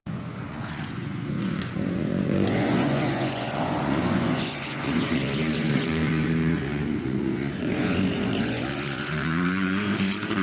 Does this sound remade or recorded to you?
remade